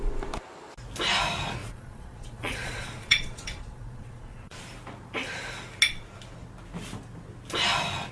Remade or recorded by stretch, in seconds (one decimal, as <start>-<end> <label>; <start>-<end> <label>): 0.0-1.6 recorded; 1.6-4.6 remade; 4.6-8.1 recorded